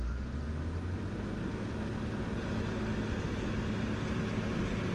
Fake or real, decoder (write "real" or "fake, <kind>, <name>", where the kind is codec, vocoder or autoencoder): real